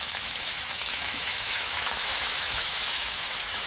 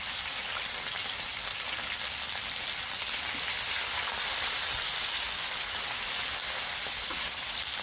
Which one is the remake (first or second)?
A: first